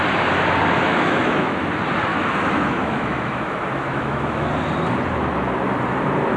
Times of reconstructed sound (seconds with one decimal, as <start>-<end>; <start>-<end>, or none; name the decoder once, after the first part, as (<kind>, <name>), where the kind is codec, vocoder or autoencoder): 0.9-1.7 (autoencoder, DAC-VAE); 2.1-4.5